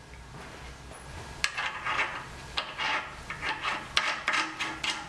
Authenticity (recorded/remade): recorded